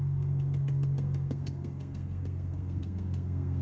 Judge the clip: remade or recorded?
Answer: remade